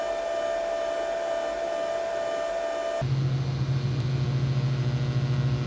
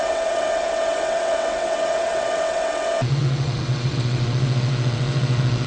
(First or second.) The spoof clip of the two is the second